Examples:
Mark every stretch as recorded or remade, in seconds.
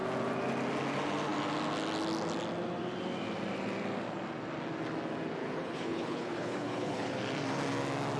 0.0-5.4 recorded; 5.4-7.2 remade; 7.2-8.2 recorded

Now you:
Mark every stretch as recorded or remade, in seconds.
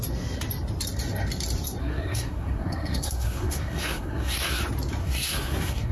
0.0-1.8 recorded; 1.8-4.6 remade; 4.6-5.0 recorded; 5.0-5.9 remade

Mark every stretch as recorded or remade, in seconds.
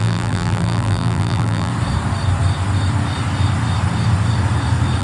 0.0-1.7 remade; 1.7-5.0 recorded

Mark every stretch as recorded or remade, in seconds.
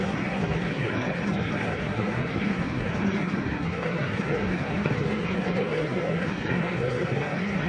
0.0-7.7 remade